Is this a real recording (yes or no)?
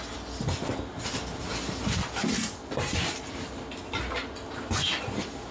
yes